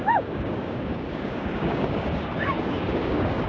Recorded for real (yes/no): no